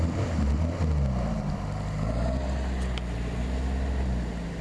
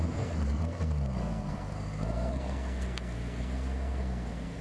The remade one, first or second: second